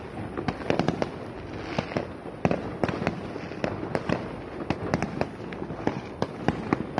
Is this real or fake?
real